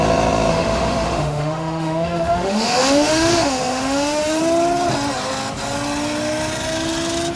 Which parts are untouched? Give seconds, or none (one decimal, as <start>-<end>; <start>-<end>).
0.0-0.5; 4.4-7.4